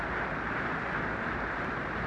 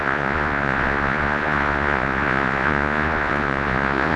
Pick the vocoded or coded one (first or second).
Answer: second